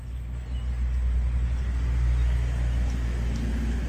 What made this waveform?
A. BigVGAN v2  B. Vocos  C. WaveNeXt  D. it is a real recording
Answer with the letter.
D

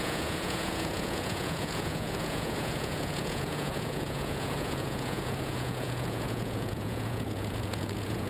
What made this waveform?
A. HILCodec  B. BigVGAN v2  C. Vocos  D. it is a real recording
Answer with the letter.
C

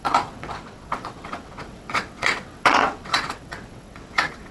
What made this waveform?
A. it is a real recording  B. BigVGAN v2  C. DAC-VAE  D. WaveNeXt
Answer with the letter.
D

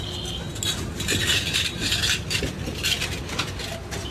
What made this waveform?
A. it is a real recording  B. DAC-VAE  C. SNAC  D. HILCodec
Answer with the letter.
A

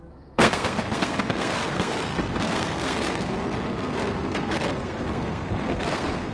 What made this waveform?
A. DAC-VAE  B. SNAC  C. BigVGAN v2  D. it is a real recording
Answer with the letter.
B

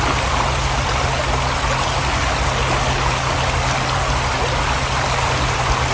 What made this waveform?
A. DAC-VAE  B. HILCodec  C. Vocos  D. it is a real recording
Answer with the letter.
D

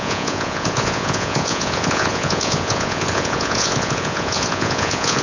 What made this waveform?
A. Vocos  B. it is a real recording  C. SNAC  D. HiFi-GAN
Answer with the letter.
A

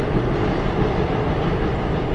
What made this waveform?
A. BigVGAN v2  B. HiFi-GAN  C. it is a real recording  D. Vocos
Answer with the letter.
C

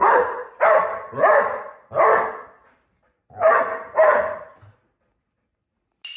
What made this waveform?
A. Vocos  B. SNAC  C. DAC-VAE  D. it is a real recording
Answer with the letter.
D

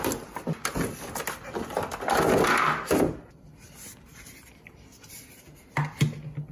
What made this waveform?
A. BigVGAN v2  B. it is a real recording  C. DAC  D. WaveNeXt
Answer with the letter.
B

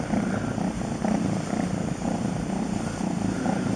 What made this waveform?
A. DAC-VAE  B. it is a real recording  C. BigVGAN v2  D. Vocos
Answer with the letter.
C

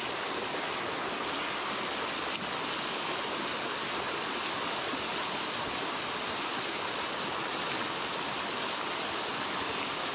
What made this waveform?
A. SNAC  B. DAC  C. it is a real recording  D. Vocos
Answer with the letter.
C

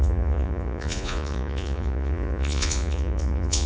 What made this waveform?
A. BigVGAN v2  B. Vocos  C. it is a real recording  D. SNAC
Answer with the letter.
B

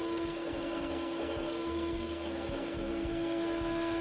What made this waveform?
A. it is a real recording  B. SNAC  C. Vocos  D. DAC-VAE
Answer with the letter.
B